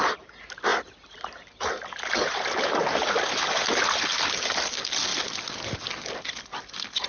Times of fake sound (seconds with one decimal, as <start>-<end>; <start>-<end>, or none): none